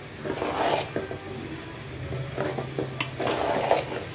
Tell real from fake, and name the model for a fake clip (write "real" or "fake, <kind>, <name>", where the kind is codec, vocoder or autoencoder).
real